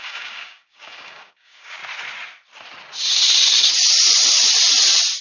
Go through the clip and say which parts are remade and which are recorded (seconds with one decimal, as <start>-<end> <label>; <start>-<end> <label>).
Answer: 0.0-1.8 remade; 1.8-5.2 recorded